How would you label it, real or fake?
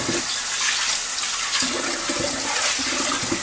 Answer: real